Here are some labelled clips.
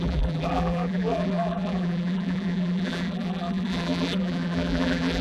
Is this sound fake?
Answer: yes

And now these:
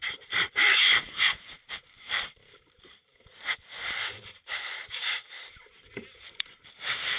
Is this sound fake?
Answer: yes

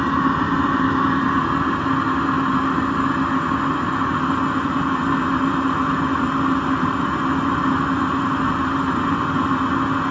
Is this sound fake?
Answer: no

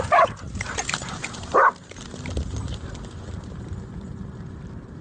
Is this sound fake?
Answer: no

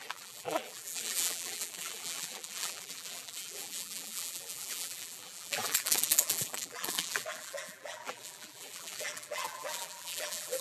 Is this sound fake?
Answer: yes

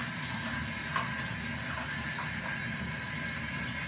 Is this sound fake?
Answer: no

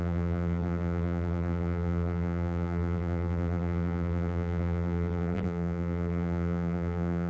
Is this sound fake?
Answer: yes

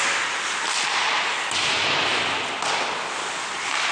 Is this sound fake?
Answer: no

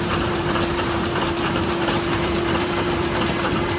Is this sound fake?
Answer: yes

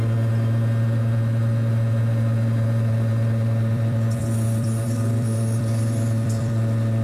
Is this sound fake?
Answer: yes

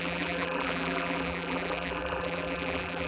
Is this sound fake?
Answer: yes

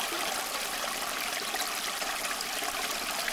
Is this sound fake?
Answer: yes